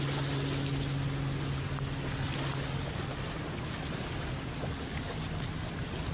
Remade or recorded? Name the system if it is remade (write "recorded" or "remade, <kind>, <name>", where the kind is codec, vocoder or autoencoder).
recorded